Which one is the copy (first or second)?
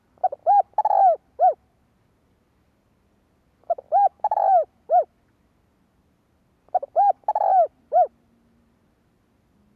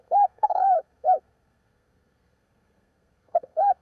second